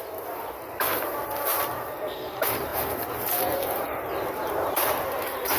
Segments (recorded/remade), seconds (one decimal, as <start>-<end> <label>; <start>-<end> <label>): 0.0-5.6 remade